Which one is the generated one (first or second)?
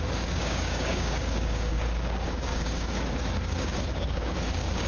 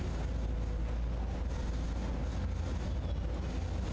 first